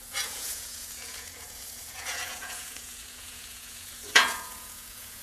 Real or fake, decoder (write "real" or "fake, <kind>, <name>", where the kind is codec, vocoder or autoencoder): fake, vocoder, Vocos